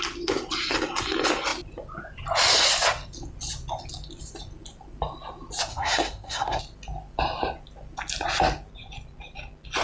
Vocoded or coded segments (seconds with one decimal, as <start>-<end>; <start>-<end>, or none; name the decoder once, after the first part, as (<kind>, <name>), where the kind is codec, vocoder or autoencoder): 5.7-6.6 (codec, SNAC)